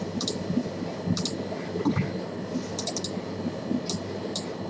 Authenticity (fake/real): real